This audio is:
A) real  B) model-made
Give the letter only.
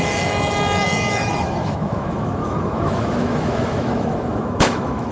B